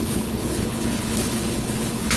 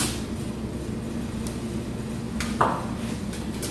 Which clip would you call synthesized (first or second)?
first